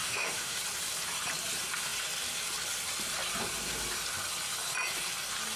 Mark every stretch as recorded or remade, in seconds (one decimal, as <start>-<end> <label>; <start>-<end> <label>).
0.0-0.6 remade; 0.6-5.6 recorded